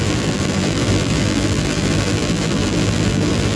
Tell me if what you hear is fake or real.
fake